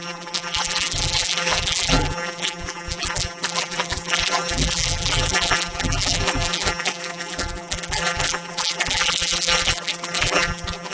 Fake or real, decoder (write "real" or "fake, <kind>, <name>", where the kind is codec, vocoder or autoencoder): fake, vocoder, BigVGAN v2